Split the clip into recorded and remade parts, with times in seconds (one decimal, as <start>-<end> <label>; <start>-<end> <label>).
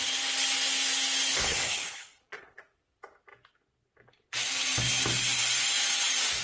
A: 0.0-1.3 recorded; 1.3-2.6 remade; 2.6-6.4 recorded